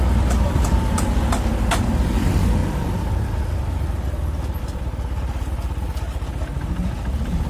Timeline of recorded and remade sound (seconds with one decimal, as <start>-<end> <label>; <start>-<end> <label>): 0.0-7.5 recorded